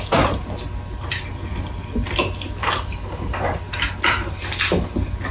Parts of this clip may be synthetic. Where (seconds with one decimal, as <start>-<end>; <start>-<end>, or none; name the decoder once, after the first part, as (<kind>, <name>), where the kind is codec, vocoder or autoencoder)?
2.6-3.6 (codec, DAC)

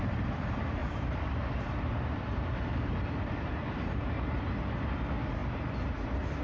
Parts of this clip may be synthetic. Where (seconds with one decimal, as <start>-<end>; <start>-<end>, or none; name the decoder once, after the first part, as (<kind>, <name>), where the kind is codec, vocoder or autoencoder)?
0.8-4.4 (vocoder, BigVGAN v2)